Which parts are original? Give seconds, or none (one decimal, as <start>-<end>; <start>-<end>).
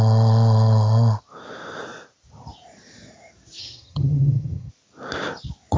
0.0-3.6; 4.7-5.8